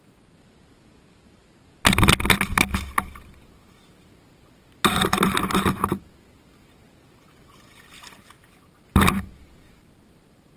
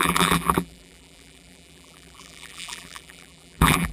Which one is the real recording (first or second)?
first